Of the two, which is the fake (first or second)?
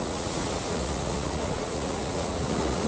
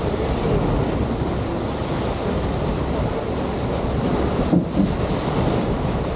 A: first